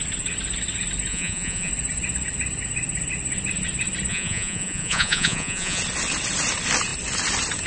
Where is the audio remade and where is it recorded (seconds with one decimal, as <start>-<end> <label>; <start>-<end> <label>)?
0.0-1.1 recorded; 1.1-1.7 remade; 1.7-4.1 recorded; 4.1-5.8 remade; 5.8-7.7 recorded